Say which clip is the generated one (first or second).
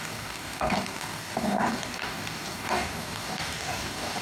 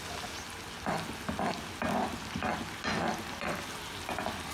first